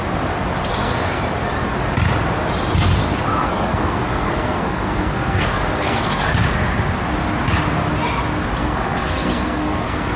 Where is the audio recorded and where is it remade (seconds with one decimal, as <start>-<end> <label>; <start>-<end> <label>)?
0.0-0.7 recorded; 0.7-1.2 remade; 1.2-3.4 recorded; 3.4-6.3 remade; 6.3-8.6 recorded; 8.6-10.2 remade